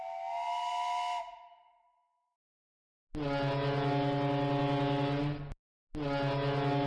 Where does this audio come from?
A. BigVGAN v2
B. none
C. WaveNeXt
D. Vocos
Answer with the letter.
B